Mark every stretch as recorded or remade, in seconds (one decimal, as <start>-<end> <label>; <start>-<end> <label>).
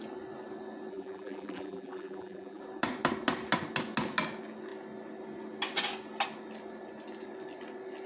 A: 0.0-0.9 recorded; 0.9-2.6 remade; 2.6-8.1 recorded